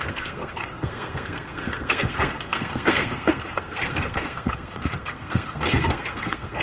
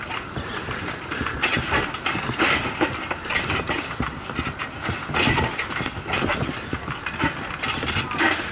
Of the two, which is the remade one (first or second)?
first